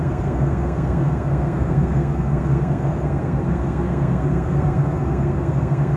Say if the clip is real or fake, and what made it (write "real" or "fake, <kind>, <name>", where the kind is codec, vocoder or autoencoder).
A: fake, codec, SNAC